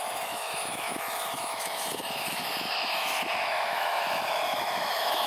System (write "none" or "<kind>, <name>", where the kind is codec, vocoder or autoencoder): autoencoder, DAC-VAE